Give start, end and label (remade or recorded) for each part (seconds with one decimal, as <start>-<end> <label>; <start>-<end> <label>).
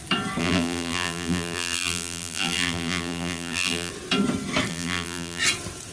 0.0-0.4 recorded; 0.4-3.9 remade; 3.9-4.7 recorded; 4.7-5.4 remade; 5.4-5.9 recorded